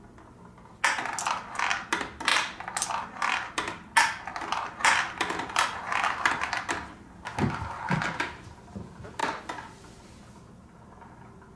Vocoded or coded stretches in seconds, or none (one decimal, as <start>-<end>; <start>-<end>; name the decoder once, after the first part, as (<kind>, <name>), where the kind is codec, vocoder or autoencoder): 4.8-6.5 (vocoder, BigVGAN v2)